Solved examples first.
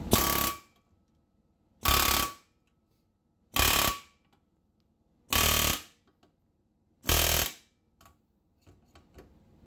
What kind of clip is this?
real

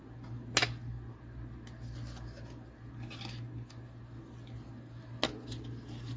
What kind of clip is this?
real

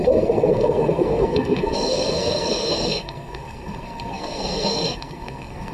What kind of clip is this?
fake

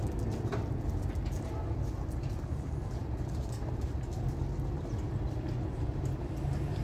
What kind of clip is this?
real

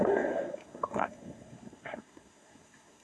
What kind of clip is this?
fake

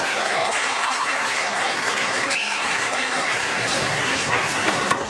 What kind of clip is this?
fake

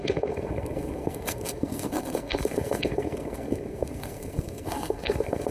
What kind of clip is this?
fake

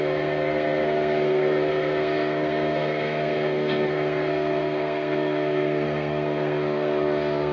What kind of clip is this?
fake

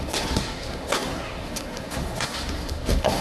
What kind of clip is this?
fake